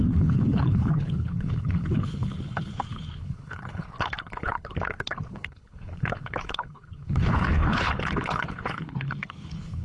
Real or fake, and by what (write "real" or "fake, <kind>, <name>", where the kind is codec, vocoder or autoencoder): fake, codec, HILCodec